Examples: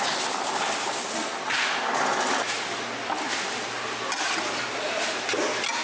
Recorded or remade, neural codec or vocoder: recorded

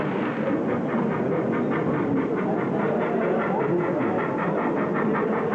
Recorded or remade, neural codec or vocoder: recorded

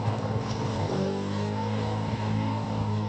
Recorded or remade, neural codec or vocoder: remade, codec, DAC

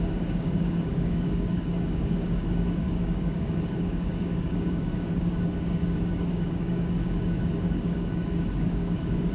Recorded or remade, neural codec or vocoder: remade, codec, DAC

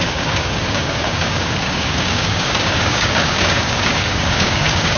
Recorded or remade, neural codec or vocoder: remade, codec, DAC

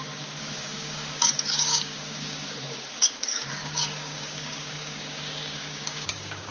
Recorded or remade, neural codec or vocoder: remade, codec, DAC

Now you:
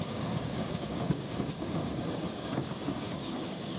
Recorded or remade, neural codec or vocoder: remade, codec, DAC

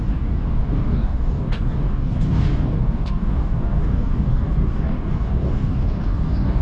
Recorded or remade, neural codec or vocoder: remade, codec, DAC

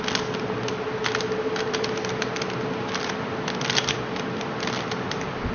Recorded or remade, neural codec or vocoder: recorded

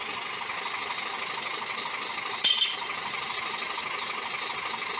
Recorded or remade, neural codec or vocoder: recorded